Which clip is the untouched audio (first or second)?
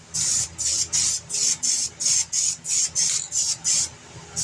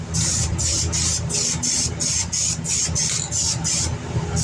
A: first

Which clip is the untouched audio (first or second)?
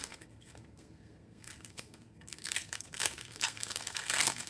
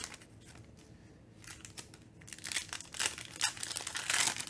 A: second